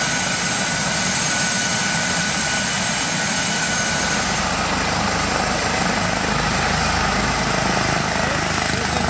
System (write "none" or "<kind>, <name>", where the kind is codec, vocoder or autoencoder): none